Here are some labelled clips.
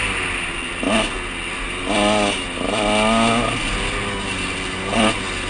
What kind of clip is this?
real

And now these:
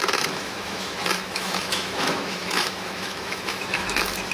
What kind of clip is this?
fake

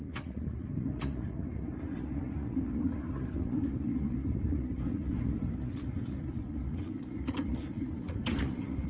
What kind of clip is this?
fake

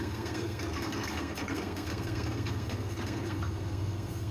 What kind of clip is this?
fake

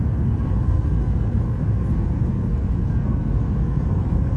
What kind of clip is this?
fake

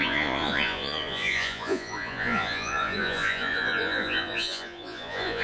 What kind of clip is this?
fake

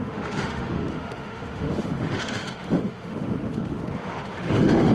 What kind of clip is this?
fake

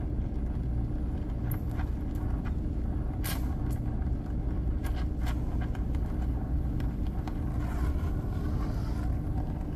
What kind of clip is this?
real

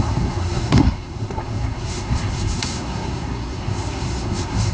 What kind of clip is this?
fake